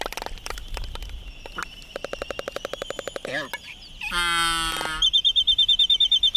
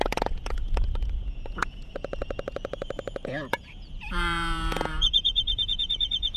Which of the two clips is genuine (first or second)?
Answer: first